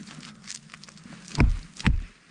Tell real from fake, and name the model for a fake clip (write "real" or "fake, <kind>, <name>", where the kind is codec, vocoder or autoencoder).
real